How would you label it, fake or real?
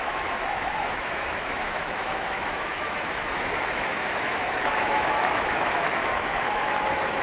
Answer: fake